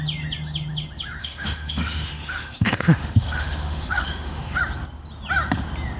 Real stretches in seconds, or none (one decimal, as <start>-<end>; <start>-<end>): 0.0-1.2; 4.6-6.0